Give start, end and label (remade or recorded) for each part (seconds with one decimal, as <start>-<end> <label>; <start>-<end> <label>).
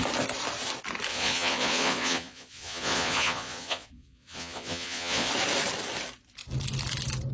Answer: 0.0-1.1 recorded; 1.1-5.3 remade; 5.3-7.3 recorded